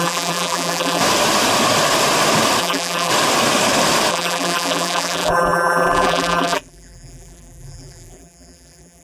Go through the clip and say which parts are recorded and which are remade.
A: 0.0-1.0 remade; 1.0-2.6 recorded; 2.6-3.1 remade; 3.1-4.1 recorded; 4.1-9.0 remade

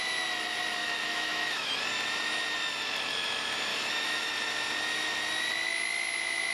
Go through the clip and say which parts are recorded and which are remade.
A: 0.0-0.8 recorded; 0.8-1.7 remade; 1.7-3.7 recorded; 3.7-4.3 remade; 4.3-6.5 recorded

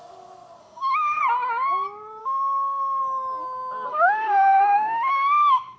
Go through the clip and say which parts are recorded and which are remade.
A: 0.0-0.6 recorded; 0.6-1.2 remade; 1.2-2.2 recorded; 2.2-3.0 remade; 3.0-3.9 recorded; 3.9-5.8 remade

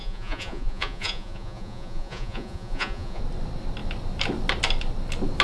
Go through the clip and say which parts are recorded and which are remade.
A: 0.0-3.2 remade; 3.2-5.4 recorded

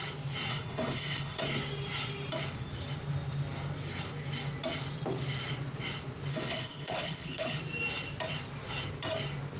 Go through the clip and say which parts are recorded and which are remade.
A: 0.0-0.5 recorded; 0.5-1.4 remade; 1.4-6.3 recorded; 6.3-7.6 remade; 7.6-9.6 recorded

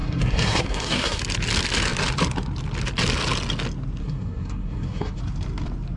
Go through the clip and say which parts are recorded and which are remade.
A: 0.0-1.2 remade; 1.2-4.0 recorded; 4.0-5.2 remade; 5.2-6.0 recorded